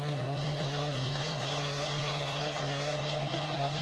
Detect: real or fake fake